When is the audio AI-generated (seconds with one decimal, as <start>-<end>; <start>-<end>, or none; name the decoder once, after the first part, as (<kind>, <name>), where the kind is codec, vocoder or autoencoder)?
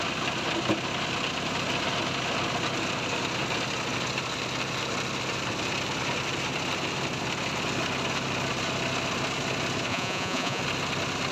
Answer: 9.9-10.6 (vocoder, Vocos)